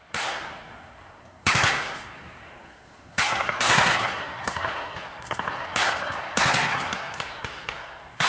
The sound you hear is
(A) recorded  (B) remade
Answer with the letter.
B